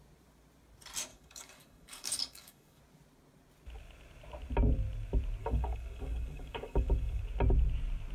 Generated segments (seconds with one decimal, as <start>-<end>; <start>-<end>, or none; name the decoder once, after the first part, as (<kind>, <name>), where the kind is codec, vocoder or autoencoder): 1.1-2.8 (codec, DAC); 5.4-7.2